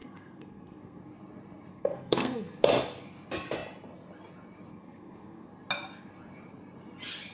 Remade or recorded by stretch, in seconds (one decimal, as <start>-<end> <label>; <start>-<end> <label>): 0.0-1.0 remade; 1.0-1.7 recorded; 1.7-2.6 remade; 2.6-4.7 recorded; 4.7-5.5 remade; 5.5-7.3 recorded